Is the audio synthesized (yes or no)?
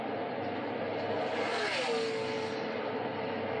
no